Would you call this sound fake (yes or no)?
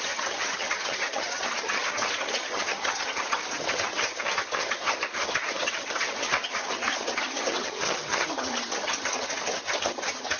yes